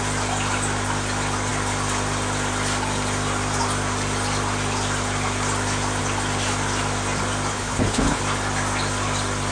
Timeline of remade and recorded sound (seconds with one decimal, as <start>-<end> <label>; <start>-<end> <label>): 0.0-7.5 recorded; 7.5-8.2 remade; 8.2-9.5 recorded